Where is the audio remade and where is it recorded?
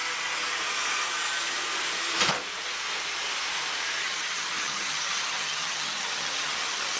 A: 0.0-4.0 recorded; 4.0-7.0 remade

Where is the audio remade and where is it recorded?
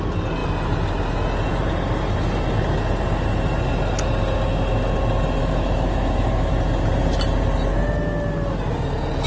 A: 0.0-5.4 recorded; 5.4-6.5 remade; 6.5-9.3 recorded